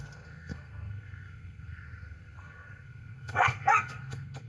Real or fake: fake